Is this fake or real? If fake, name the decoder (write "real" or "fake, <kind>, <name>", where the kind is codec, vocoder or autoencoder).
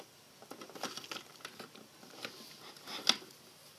real